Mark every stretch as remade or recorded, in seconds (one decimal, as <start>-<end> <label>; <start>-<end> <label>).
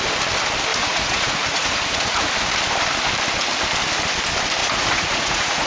0.0-0.7 recorded; 0.7-2.3 remade; 2.3-4.6 recorded; 4.6-5.7 remade